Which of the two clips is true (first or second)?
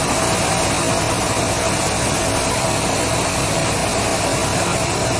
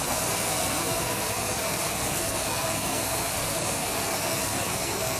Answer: first